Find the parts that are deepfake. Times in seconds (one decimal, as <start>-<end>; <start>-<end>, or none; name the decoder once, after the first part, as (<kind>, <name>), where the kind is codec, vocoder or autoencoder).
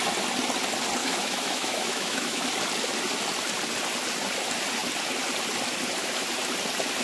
1.0-2.4 (autoencoder, DAC-VAE)